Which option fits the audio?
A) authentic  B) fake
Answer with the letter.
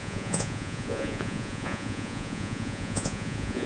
B